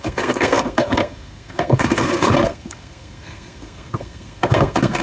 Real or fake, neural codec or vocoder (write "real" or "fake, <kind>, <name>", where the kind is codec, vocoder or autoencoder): fake, codec, SNAC